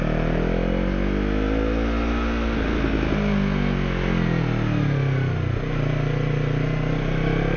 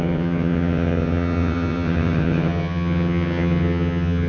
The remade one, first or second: second